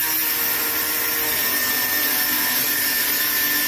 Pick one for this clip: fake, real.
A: real